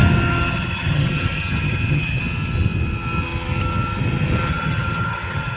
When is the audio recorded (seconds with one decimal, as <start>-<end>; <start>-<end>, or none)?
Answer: 0.0-0.5; 2.2-4.5